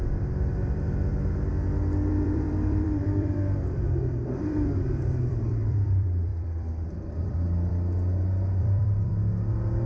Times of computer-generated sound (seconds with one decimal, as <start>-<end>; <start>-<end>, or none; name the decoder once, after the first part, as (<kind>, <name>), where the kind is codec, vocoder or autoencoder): 0.0-1.1 (vocoder, BigVGAN v2); 2.1-7.7; 8.6-9.1